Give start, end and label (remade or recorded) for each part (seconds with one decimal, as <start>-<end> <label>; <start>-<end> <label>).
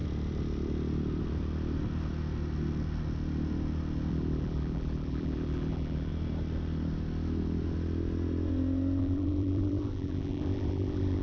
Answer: 0.0-4.1 recorded; 4.1-6.1 remade; 6.1-9.0 recorded; 9.0-11.2 remade